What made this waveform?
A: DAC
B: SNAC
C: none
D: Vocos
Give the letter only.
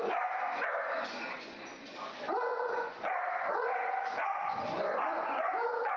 D